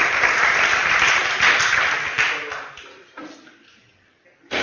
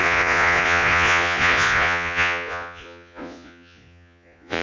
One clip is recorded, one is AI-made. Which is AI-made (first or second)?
second